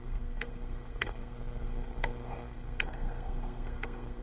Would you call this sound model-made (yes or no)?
yes